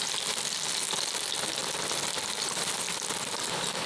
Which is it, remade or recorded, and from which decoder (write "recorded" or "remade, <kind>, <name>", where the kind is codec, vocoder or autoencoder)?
remade, vocoder, BigVGAN v2